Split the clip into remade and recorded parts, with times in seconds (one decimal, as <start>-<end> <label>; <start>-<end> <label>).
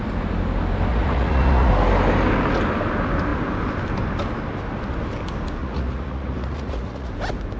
0.0-0.9 recorded; 0.9-1.7 remade; 1.7-5.6 recorded; 5.6-7.1 remade; 7.1-7.6 recorded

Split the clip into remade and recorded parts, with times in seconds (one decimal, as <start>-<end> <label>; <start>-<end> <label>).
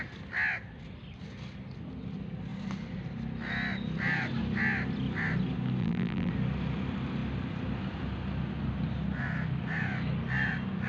0.0-5.8 recorded; 5.8-6.3 remade; 6.3-10.9 recorded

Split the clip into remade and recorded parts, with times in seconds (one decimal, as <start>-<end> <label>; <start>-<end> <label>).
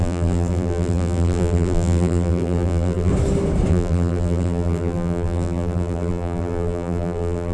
0.0-3.1 remade; 3.1-3.7 recorded; 3.7-7.5 remade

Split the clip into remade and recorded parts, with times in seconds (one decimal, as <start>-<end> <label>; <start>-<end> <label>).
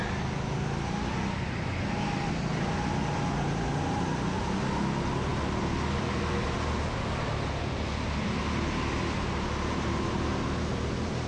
0.0-11.3 recorded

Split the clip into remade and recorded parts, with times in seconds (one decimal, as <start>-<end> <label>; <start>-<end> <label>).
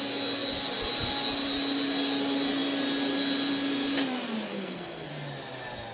0.0-4.5 recorded; 4.5-5.1 remade; 5.1-5.9 recorded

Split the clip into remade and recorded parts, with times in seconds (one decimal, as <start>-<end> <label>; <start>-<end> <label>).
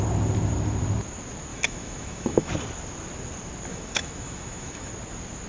0.0-1.5 recorded; 1.5-2.5 remade; 2.5-3.7 recorded; 3.7-4.9 remade; 4.9-5.5 recorded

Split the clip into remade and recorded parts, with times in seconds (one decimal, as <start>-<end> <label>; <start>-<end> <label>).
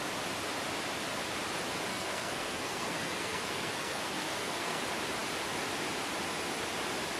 0.0-1.9 recorded; 1.9-4.8 remade; 4.8-7.2 recorded